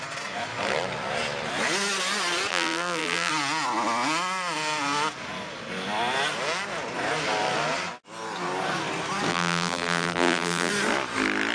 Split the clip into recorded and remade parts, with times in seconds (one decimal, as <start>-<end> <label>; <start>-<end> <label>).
0.0-2.5 recorded; 2.5-3.3 remade; 3.3-9.3 recorded; 9.3-10.7 remade; 10.7-11.5 recorded